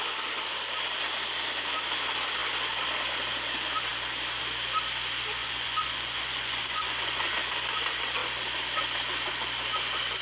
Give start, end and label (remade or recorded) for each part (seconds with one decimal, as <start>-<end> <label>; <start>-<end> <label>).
0.0-5.4 recorded; 5.4-7.4 remade; 7.4-10.2 recorded